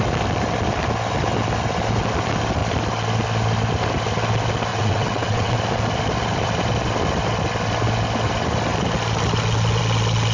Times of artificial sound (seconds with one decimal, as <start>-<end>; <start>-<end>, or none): 4.7-5.6